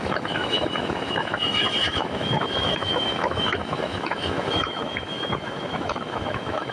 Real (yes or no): no